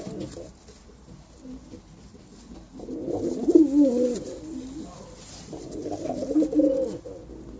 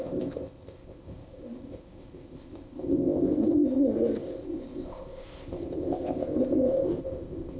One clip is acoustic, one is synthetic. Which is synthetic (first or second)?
second